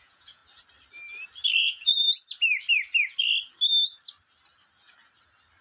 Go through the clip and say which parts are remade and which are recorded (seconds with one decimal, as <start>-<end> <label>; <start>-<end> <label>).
0.0-0.4 remade; 0.4-1.6 recorded; 1.6-2.0 remade; 2.0-5.6 recorded